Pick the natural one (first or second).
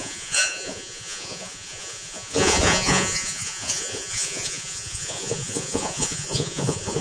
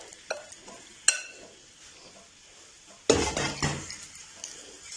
second